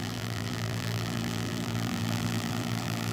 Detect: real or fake fake